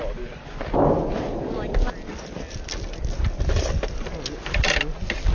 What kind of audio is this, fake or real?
real